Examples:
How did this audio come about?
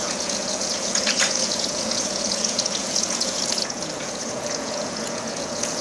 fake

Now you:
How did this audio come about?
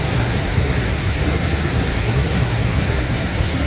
fake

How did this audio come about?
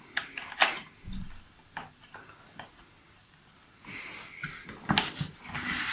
real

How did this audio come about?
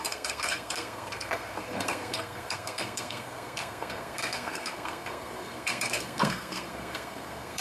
fake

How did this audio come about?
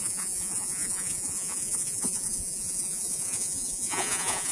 fake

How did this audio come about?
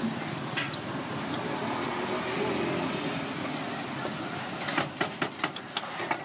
real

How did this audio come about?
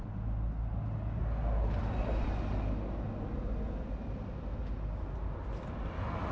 real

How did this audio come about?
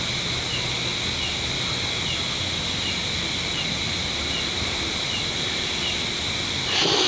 real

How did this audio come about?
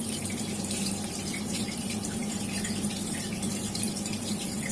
fake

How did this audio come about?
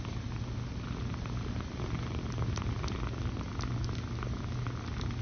real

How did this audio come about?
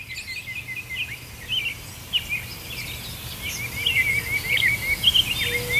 real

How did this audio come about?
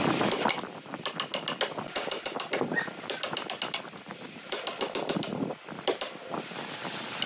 real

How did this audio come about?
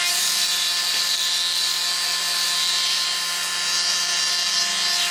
fake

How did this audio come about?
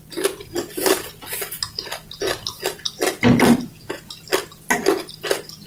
real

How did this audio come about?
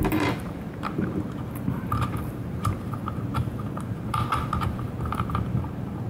fake